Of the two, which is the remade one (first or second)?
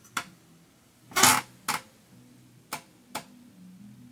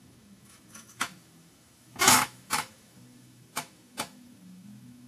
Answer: second